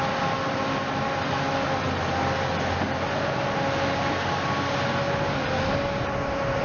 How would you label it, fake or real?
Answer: real